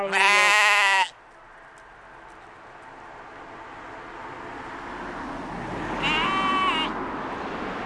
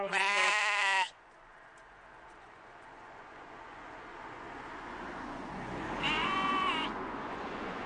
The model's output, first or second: second